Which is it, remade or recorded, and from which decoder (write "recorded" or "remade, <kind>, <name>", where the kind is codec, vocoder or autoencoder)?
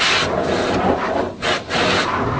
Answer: recorded